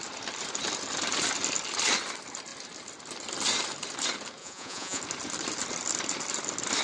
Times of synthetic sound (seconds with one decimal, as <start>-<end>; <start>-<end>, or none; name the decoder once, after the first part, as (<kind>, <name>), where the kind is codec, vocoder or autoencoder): 4.4-5.0 (vocoder, Vocos)